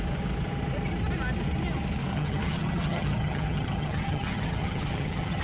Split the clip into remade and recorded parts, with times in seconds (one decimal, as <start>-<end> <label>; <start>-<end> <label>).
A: 0.0-2.1 recorded; 2.1-5.4 remade